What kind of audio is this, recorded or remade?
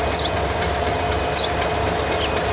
recorded